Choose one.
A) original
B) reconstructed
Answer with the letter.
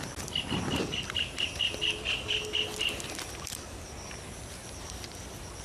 A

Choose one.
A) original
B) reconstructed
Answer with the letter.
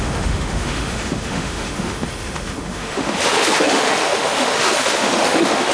B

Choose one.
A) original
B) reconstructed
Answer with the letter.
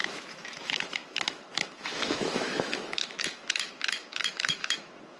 B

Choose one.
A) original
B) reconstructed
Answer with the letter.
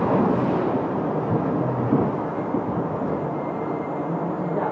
A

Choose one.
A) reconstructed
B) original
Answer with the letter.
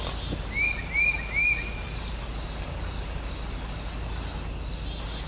B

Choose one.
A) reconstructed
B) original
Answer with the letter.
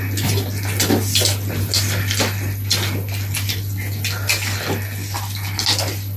B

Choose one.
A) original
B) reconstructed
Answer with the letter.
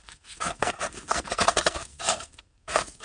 B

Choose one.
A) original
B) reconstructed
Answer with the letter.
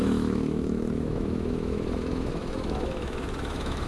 B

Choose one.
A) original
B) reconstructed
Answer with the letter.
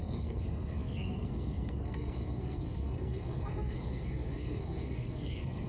B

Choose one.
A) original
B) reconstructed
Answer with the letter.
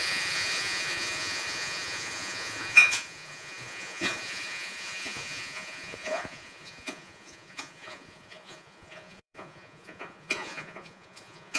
B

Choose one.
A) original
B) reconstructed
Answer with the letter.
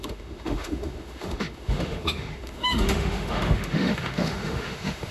B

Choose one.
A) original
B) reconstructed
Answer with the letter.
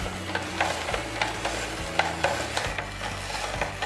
A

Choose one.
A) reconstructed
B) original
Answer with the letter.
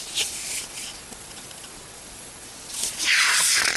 A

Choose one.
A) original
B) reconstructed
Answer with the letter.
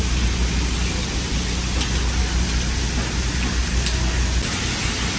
A